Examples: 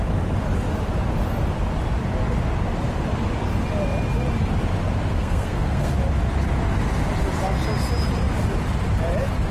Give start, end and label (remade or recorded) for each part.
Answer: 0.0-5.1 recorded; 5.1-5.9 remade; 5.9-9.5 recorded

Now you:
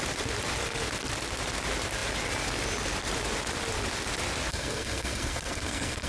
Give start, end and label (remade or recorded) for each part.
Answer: 0.0-4.5 recorded; 4.5-6.1 remade

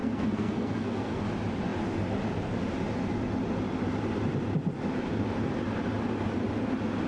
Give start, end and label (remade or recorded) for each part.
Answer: 0.0-1.2 remade; 1.2-7.1 recorded

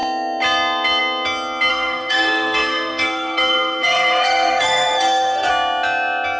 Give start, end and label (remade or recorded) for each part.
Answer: 0.0-1.7 recorded; 1.7-5.5 remade; 5.5-6.4 recorded